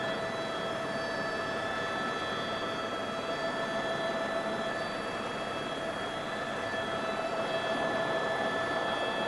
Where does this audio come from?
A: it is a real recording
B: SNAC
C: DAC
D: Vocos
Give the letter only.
A